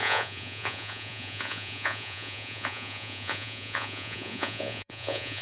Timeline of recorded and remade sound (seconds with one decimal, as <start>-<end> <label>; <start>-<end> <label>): 0.0-5.4 remade